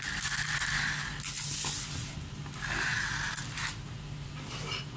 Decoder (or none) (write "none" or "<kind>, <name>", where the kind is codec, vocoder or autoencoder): none